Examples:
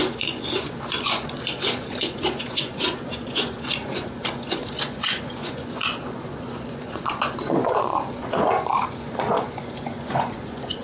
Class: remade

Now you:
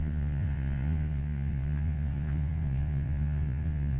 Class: remade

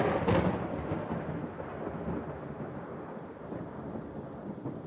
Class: recorded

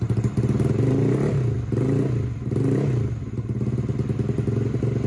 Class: recorded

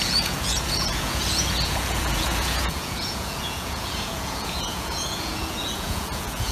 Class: remade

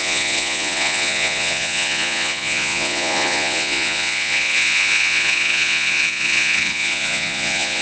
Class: remade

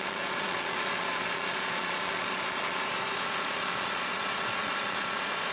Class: remade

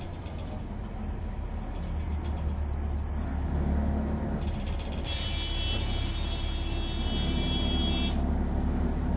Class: recorded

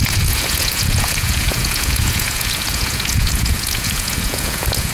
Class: remade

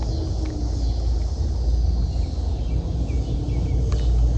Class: recorded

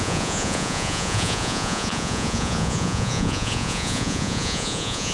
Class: remade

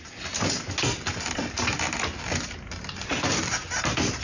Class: recorded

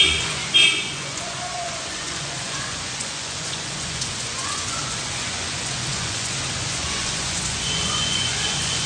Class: remade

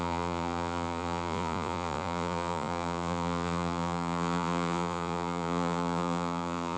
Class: remade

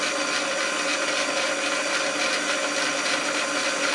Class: recorded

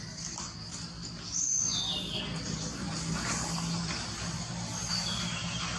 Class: recorded